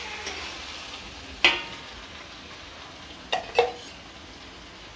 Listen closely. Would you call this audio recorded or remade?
recorded